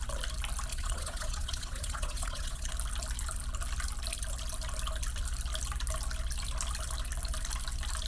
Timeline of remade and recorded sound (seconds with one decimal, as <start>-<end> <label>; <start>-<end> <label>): 0.0-0.7 recorded; 0.7-2.7 remade; 2.7-8.1 recorded